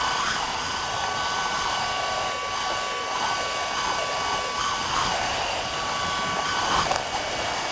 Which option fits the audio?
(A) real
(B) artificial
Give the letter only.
A